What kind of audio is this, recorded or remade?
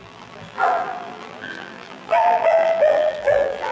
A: remade